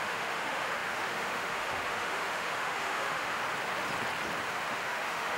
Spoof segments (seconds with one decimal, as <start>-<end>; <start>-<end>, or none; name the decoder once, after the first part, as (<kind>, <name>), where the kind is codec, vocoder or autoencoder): 0.0-3.4 (autoencoder, DAC-VAE); 4.5-5.4